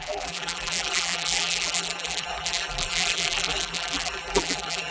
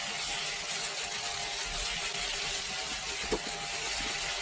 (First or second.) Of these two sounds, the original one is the second